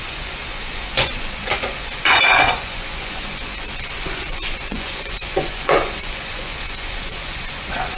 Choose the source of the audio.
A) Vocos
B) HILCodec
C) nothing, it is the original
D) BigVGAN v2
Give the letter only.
A